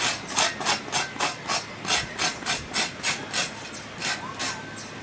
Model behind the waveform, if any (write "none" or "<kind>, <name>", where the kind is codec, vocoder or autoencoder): none